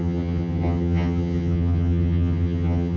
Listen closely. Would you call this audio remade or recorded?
remade